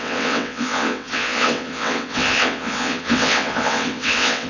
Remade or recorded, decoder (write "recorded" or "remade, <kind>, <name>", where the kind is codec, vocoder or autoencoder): remade, vocoder, WaveNeXt